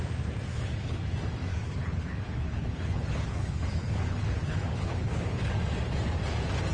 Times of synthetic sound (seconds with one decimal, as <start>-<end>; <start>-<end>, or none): 0.5-1.0; 1.5-5.5